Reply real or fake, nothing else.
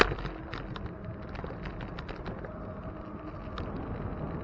real